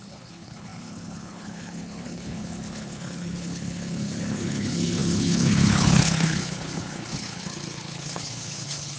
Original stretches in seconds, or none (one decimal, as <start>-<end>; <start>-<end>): none

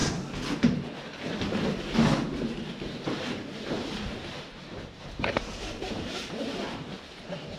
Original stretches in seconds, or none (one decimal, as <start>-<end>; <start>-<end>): 0.0-3.6

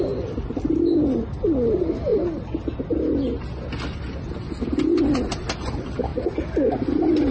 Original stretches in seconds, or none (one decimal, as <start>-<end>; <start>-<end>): 0.0-7.3

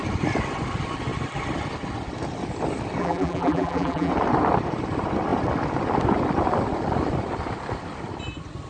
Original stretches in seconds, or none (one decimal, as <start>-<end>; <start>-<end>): 0.0-3.0; 4.1-8.7

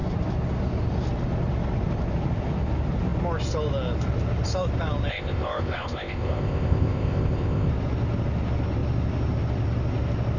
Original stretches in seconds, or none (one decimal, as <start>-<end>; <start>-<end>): 0.0-5.1; 7.7-10.4